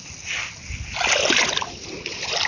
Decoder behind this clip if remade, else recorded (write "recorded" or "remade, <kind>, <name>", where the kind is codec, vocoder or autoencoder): recorded